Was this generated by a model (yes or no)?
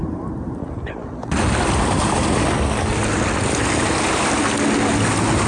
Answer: no